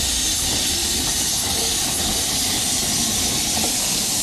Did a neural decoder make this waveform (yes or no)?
no